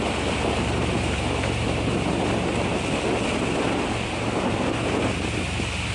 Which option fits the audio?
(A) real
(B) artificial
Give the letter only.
A